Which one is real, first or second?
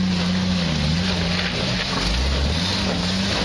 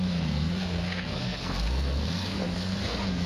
first